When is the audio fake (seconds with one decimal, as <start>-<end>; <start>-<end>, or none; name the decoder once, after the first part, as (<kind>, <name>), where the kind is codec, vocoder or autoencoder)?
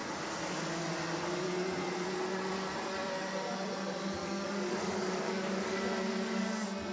4.2-5.8 (codec, DAC)